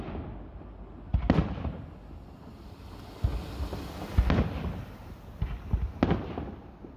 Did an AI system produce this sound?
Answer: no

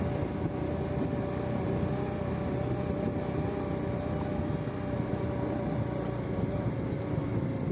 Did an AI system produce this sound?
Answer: no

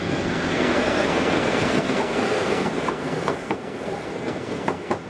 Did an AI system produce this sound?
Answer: yes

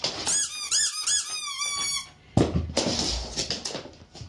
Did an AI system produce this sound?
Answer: no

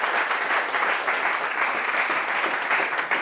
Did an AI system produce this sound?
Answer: no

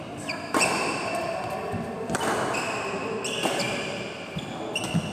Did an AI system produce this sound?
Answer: no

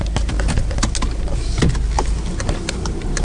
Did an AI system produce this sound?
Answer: no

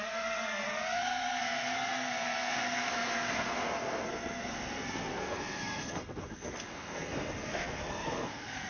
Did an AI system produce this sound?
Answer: yes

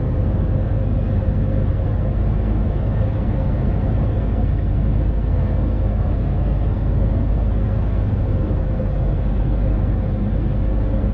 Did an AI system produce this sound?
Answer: yes